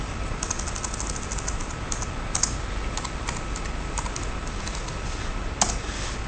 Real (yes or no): yes